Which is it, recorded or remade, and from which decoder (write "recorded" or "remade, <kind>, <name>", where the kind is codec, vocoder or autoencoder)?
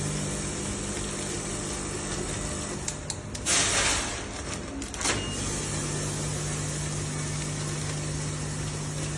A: recorded